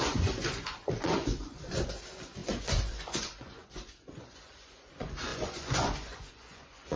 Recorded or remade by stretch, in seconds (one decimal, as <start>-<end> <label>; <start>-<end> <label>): 0.0-7.0 remade